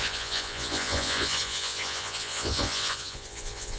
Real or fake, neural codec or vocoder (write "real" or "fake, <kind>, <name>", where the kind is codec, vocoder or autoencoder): fake, vocoder, Vocos